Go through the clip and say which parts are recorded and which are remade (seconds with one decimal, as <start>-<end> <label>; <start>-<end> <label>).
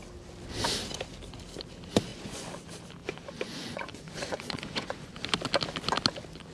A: 0.0-2.1 recorded; 2.1-2.6 remade; 2.6-3.0 recorded; 3.0-5.2 remade; 5.2-6.5 recorded